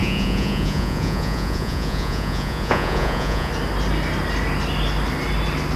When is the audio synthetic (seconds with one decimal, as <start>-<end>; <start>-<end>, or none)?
0.0-3.5